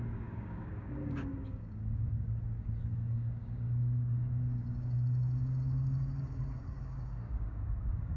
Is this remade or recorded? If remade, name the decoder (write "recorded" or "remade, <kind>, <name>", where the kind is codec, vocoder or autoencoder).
remade, codec, DAC